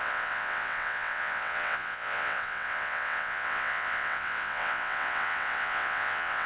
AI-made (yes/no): yes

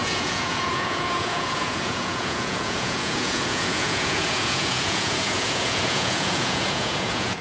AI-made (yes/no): yes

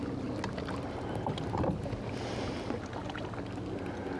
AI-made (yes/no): no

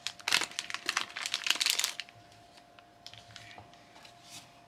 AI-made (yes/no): no